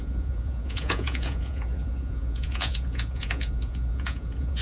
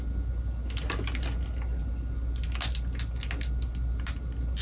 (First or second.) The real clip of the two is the second